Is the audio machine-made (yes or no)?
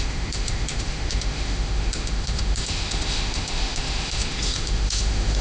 yes